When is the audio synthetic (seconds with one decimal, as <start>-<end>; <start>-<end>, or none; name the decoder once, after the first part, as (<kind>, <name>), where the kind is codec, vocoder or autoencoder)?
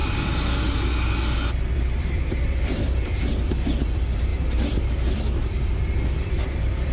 1.6-6.9 (vocoder, BigVGAN v2)